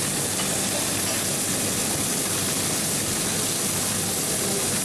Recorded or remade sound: recorded